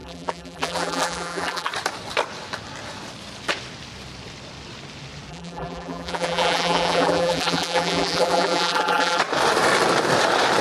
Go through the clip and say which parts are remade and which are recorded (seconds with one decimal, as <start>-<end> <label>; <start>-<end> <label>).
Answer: 0.0-1.7 remade; 1.7-5.3 recorded; 5.3-9.2 remade; 9.2-10.6 recorded